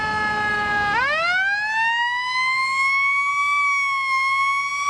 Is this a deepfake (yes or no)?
no